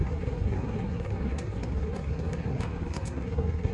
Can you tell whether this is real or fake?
fake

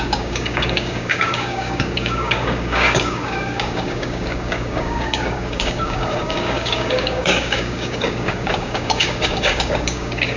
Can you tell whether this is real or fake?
fake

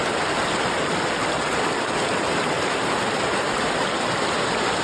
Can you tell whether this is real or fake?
real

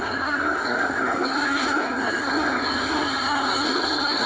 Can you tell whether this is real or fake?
fake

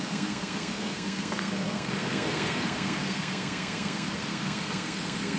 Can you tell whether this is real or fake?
fake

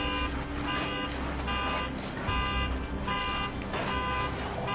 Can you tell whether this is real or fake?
real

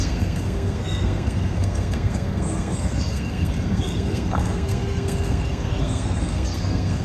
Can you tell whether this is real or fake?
fake